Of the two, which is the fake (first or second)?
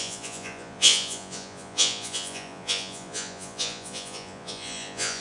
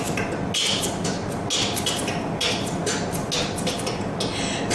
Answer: first